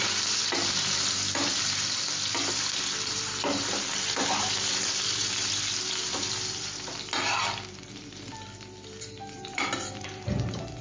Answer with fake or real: fake